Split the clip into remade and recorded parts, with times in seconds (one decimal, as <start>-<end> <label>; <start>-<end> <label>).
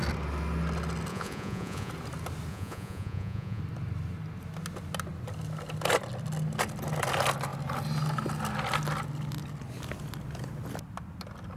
0.0-1.1 recorded; 1.1-1.9 remade; 1.9-2.5 recorded; 2.5-3.6 remade; 3.6-11.6 recorded